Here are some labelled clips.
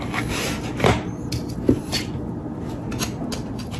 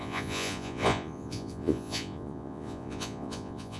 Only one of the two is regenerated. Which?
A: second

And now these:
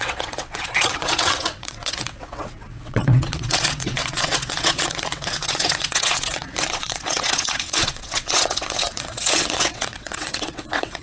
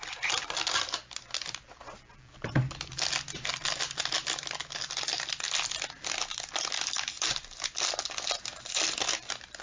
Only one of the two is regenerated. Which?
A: first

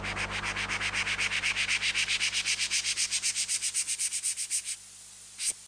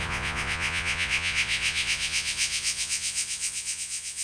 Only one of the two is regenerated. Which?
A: second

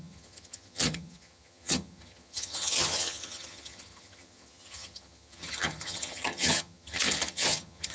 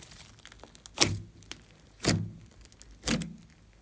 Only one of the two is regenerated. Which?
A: first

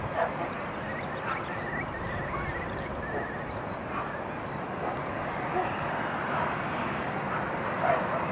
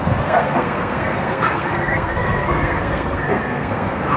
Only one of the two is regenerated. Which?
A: second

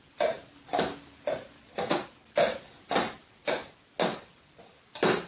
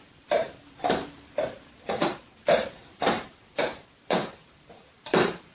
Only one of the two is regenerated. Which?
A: second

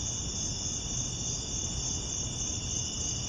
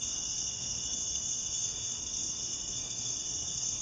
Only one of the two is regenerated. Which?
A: second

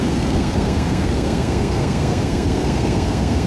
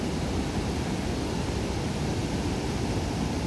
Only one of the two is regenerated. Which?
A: first